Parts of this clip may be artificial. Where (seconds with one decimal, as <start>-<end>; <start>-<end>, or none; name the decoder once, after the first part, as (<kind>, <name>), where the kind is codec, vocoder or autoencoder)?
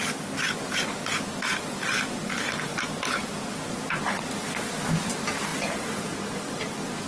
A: none